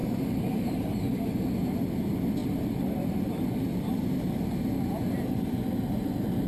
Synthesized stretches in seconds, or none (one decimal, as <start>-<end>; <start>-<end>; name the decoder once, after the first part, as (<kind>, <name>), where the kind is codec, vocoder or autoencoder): 0.0-1.2 (vocoder, BigVGAN v2)